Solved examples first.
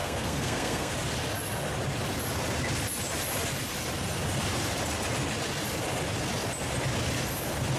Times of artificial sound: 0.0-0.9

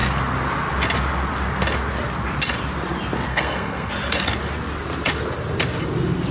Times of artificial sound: 3.3-3.9

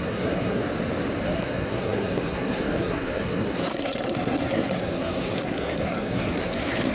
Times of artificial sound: 0.0-0.6; 1.2-6.9

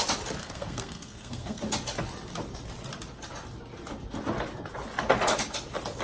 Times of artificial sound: 0.4-1.6

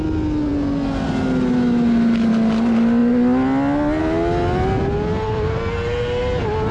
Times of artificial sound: none

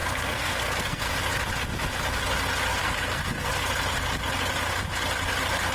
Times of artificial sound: 0.0-1.1; 2.7-3.5

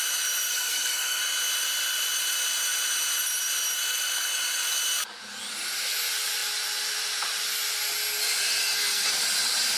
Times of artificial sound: 0.5-1.2; 8.6-9.1

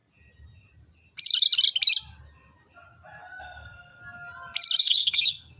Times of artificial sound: 3.4-4.0; 4.8-5.6